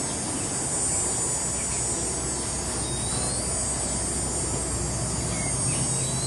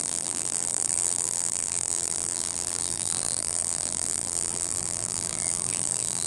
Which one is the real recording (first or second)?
first